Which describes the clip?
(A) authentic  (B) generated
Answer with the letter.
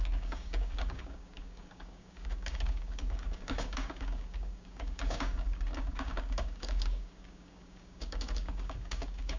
B